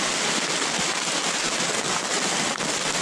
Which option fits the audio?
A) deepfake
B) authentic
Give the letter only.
B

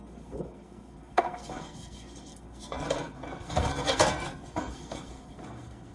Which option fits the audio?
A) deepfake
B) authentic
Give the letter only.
A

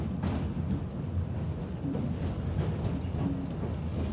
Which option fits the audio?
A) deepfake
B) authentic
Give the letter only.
B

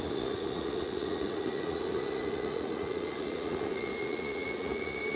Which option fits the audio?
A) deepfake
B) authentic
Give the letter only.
A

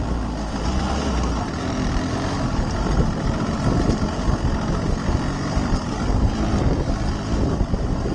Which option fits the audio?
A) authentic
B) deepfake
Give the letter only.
A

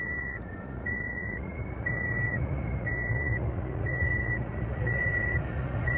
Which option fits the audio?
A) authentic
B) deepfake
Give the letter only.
B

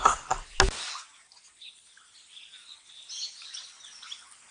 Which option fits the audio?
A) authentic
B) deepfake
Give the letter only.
A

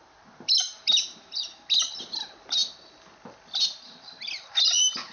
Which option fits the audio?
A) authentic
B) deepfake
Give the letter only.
A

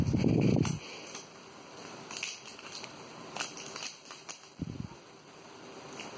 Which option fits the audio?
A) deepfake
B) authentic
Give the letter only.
B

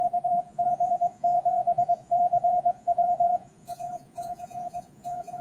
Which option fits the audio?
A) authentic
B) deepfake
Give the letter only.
B